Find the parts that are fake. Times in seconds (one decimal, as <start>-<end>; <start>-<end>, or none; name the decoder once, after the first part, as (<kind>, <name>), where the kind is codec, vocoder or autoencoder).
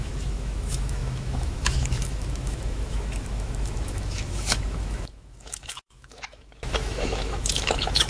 0.0-8.1 (autoencoder, DAC-VAE)